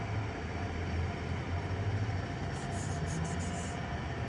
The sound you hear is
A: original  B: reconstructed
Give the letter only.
A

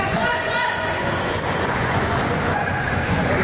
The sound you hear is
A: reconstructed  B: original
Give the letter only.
A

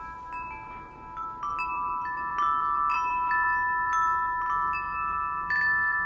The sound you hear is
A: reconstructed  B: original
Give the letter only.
B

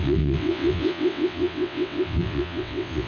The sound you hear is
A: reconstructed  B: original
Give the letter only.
A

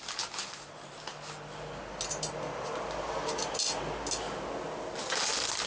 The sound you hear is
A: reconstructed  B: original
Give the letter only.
B